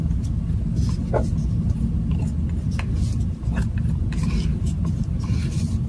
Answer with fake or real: real